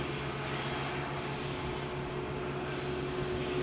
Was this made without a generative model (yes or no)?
yes